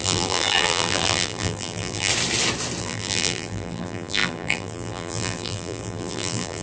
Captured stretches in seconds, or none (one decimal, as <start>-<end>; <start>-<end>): 2.1-2.8

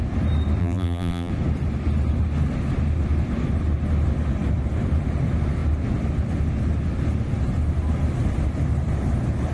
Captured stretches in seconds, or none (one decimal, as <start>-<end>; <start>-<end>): 0.0-0.6; 1.3-9.5

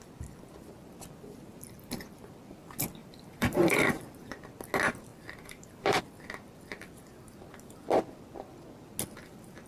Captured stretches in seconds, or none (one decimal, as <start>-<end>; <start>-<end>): 0.0-3.0; 4.0-5.1; 6.0-9.7

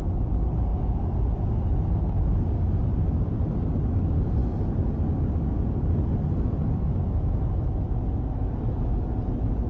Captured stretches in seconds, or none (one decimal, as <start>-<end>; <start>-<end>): 0.0-9.7